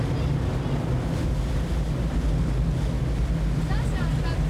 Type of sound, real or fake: real